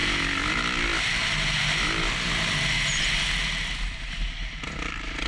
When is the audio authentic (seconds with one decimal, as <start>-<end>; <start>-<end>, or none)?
0.0-5.3